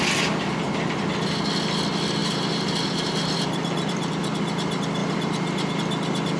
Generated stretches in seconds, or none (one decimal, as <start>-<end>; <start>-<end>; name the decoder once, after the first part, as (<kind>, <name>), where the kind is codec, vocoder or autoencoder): 2.2-4.1 (vocoder, BigVGAN v2); 5.0-5.7

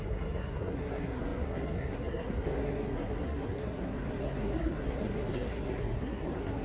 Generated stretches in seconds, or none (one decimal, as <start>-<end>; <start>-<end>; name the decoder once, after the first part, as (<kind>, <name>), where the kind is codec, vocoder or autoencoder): 0.0-6.6 (codec, SNAC)

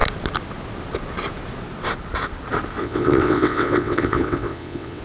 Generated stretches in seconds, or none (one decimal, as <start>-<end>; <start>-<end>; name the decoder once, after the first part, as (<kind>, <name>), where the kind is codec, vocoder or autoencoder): 2.8-5.0 (vocoder, WaveNeXt)

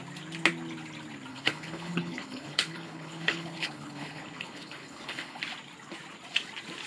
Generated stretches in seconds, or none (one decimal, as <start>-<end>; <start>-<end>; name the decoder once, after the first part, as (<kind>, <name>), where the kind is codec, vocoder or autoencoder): 1.3-5.4 (codec, HILCodec)

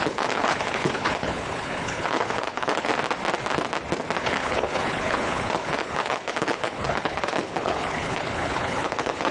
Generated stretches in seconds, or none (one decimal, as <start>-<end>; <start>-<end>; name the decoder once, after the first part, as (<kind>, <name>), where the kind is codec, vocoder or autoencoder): 0.0-2.9 (codec, HILCodec); 4.2-9.3

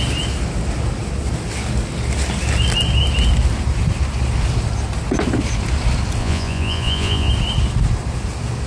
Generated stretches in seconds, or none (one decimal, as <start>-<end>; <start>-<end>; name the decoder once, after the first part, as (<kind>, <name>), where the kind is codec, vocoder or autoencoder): 6.2-7.3 (vocoder, Vocos)

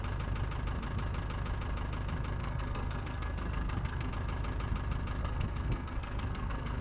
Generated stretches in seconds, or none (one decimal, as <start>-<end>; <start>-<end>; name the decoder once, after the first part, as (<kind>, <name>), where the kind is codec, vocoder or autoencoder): 2.4-4.1 (codec, SNAC); 5.2-6.8